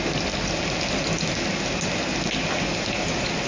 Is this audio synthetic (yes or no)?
no